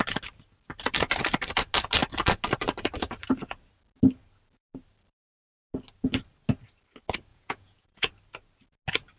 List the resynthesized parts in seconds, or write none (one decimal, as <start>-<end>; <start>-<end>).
7.3-8.1